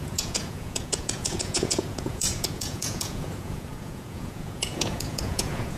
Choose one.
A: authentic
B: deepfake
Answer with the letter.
B